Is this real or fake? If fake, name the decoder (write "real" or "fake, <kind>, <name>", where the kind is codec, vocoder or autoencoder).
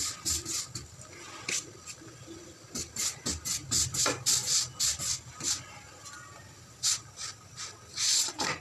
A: real